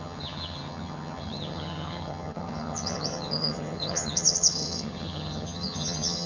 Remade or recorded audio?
remade